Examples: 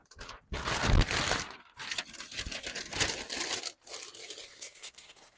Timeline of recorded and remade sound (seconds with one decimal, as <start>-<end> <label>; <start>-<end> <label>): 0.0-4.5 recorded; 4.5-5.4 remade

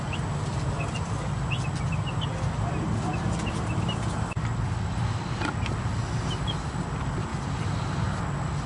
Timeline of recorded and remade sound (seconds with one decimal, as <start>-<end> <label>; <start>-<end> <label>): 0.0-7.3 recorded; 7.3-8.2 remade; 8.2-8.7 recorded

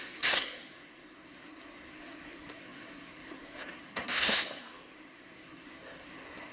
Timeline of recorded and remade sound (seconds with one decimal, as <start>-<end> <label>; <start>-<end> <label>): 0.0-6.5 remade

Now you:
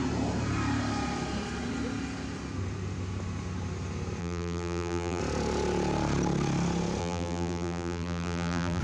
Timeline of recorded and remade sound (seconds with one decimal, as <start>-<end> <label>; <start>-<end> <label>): 0.0-4.2 recorded; 4.2-5.2 remade; 5.2-7.0 recorded; 7.0-8.8 remade

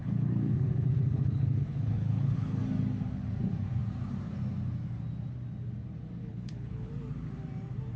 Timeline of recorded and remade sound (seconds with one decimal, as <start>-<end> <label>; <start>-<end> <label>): 0.0-2.6 remade; 2.6-6.2 recorded; 6.2-6.9 remade; 6.9-8.0 recorded

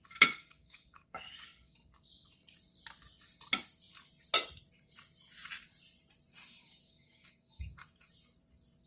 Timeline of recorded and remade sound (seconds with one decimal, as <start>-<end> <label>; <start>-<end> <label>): 0.0-0.4 recorded; 0.4-1.2 remade; 1.2-6.3 recorded; 6.3-8.1 remade; 8.1-8.9 recorded

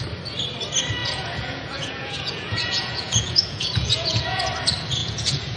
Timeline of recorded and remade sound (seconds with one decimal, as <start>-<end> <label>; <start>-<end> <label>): 0.0-1.0 recorded; 1.0-4.4 remade; 4.4-5.0 recorded; 5.0-5.6 remade